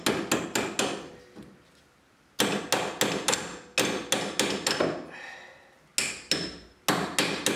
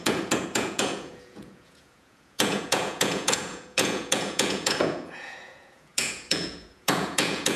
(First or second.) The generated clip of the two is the second